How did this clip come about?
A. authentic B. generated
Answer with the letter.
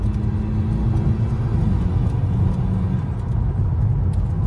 A